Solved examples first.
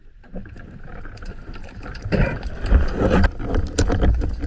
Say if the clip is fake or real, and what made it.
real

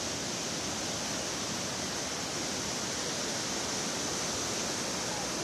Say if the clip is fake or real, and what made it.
real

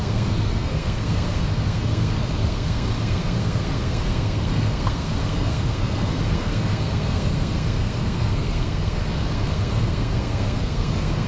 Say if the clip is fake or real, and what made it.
fake, codec, SNAC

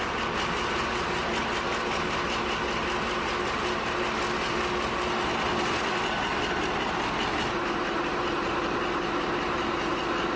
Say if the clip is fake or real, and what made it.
real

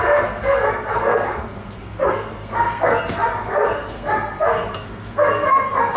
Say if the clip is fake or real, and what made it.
fake, codec, SNAC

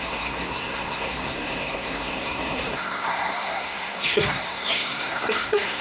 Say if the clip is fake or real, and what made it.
fake, codec, SNAC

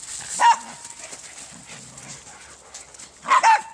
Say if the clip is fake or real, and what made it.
real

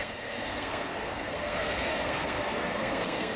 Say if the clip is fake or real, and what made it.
fake, codec, SNAC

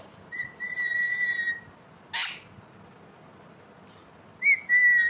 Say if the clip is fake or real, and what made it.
real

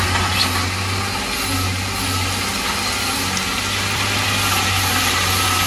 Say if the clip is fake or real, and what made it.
real